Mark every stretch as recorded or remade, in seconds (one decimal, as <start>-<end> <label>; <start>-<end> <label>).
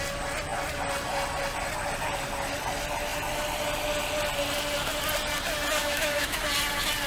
0.0-5.8 recorded; 5.8-6.4 remade; 6.4-7.1 recorded